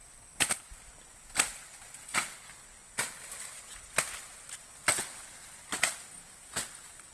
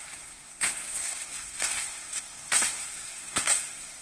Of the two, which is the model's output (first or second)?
second